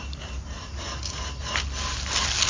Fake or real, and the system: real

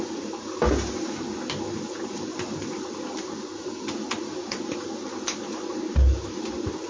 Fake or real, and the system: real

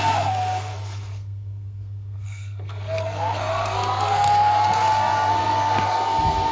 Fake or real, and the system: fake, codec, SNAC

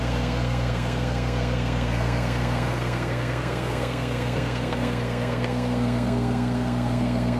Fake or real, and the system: fake, codec, SNAC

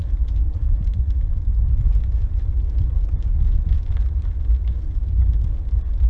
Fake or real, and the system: real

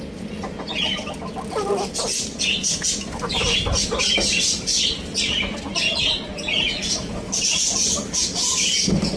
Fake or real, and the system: real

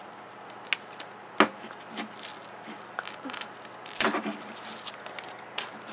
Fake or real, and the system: real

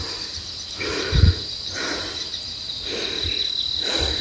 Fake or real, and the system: real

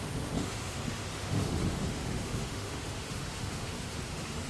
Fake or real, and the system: fake, autoencoder, DAC-VAE